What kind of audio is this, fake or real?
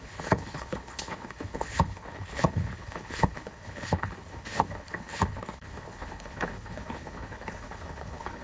fake